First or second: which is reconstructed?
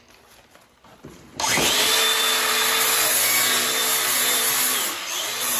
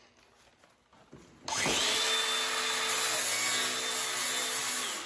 first